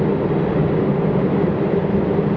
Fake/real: real